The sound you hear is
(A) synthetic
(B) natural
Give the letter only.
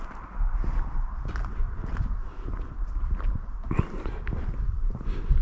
B